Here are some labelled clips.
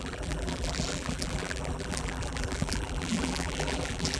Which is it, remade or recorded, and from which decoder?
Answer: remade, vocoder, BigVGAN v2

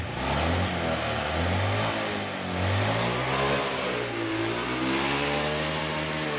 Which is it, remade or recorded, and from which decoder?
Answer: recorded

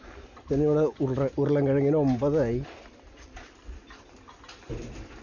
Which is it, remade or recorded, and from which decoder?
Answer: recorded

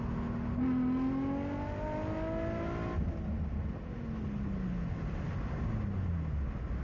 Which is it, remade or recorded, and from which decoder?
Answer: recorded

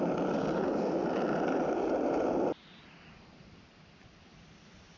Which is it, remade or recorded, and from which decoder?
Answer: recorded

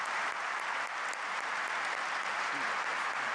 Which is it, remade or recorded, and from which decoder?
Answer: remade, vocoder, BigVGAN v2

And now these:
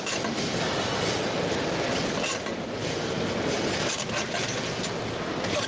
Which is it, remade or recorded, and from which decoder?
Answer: recorded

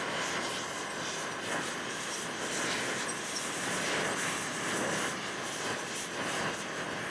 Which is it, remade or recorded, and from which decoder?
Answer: recorded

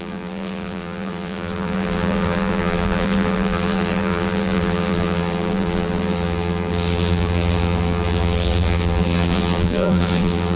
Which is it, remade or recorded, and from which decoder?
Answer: remade, vocoder, BigVGAN v2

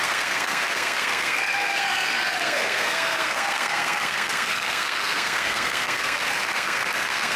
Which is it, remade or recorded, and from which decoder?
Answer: remade, codec, SNAC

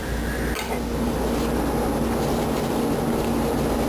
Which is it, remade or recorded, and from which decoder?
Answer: recorded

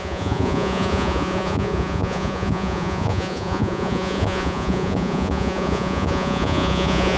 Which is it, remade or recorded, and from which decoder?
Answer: remade, vocoder, Vocos